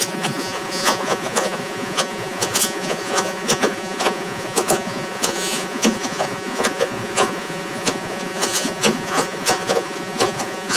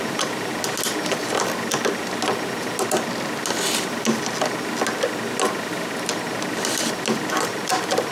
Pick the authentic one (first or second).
second